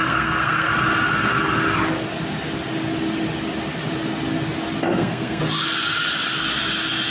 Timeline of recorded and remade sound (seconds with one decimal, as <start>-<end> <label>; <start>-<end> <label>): 0.0-0.7 remade; 0.7-4.8 recorded; 4.8-5.4 remade; 5.4-7.1 recorded